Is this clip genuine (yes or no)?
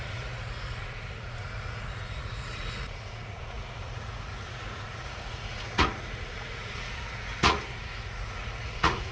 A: no